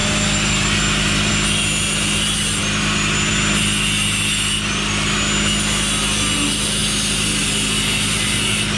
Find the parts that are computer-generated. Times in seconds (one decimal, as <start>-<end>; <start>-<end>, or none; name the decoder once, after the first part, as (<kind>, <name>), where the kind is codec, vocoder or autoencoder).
none